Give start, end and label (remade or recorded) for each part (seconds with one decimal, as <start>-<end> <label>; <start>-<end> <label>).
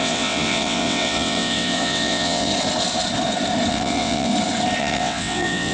0.0-2.5 remade; 2.5-3.7 recorded; 3.7-4.3 remade; 4.3-4.8 recorded; 4.8-5.7 remade